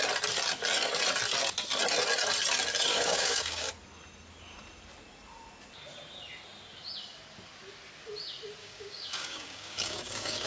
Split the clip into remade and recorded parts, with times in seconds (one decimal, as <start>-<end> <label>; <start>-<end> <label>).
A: 0.0-2.9 recorded; 2.9-3.7 remade; 3.7-8.6 recorded; 8.6-10.5 remade